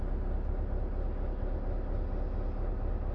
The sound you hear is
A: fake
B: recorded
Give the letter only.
B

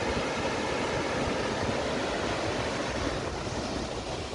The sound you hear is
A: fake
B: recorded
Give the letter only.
B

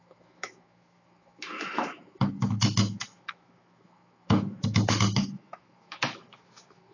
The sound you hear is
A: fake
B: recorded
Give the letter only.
A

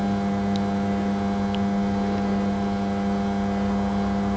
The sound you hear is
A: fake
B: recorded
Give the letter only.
B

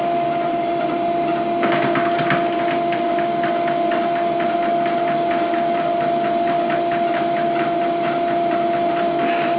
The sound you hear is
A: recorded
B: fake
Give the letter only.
A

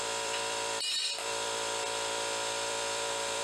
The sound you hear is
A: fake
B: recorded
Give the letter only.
A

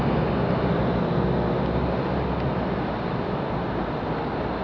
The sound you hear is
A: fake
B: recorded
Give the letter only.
B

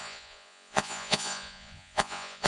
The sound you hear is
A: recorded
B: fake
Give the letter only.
B